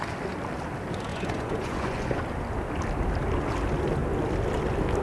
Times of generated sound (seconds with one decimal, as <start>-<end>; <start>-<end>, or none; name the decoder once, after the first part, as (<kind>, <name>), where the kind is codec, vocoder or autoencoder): 1.1-2.2 (vocoder, Vocos)